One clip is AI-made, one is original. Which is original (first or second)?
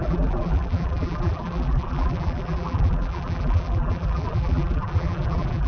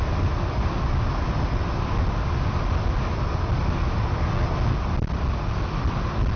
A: second